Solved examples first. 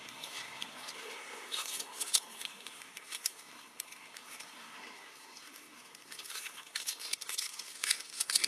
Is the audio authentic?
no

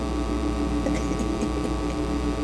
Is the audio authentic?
no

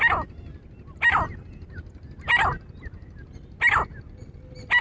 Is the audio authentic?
yes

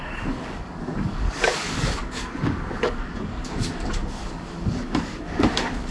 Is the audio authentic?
no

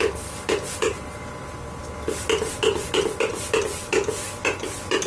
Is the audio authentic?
yes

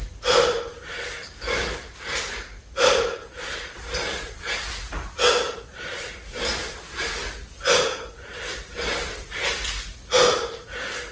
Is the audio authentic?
yes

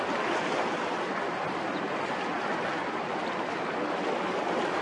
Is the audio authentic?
yes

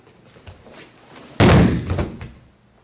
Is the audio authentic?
yes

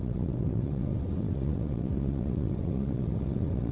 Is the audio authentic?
no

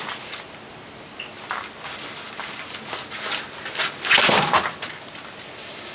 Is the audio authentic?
yes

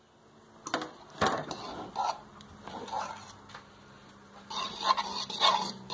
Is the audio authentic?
yes